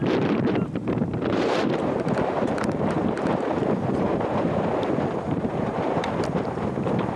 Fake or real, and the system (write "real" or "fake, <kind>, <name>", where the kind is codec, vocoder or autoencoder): fake, vocoder, BigVGAN v2